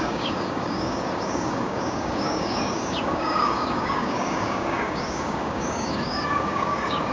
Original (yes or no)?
no